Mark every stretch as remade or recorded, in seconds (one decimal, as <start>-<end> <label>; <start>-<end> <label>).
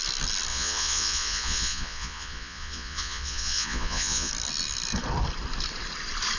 0.0-0.5 recorded; 0.5-4.3 remade; 4.3-6.4 recorded